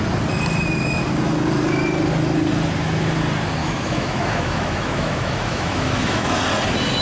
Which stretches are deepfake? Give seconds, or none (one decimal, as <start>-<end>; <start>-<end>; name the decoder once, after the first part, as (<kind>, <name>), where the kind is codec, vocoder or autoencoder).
3.6-6.4 (autoencoder, DAC-VAE)